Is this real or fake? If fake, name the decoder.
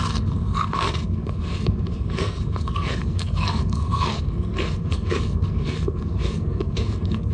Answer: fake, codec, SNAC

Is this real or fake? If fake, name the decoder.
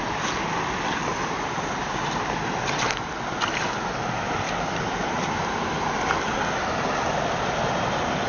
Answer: real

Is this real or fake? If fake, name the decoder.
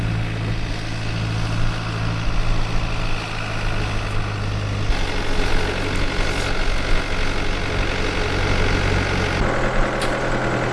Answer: real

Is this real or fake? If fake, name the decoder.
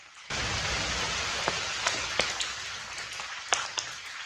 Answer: real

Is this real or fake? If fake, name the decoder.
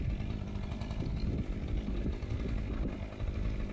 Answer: real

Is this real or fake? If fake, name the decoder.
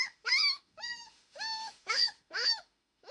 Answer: fake, autoencoder, DAC-VAE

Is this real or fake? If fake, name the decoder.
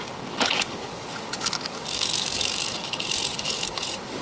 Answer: fake, codec, DAC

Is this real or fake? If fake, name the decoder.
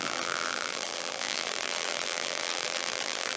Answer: fake, vocoder, BigVGAN v2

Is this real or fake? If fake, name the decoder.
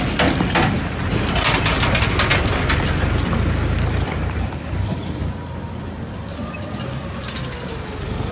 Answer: real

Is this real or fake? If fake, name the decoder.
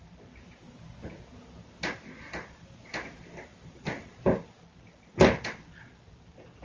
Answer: real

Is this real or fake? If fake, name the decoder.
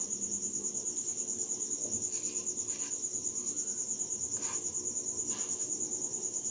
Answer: real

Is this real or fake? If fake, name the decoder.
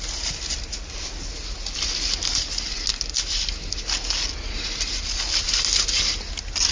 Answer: real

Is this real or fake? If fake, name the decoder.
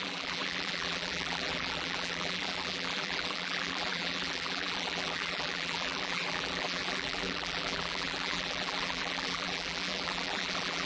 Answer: fake, vocoder, BigVGAN v2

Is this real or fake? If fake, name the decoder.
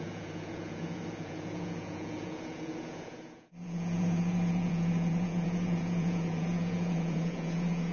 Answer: fake, vocoder, Vocos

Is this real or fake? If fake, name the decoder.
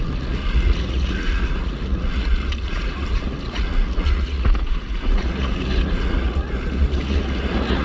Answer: fake, vocoder, Vocos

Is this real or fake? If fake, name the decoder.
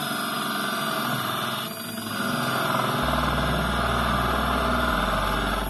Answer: real